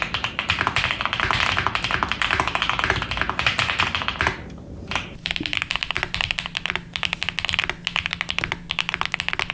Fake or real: real